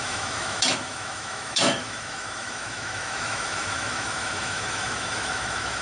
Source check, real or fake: fake